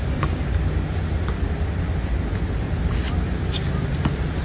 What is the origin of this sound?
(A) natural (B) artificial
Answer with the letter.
A